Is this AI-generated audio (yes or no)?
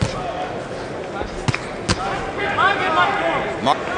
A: no